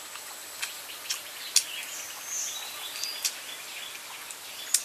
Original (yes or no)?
yes